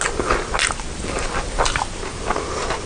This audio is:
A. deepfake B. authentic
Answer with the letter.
B